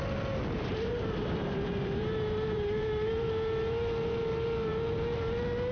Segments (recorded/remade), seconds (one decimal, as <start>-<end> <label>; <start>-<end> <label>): 0.0-0.7 recorded; 0.7-3.3 remade; 3.3-5.7 recorded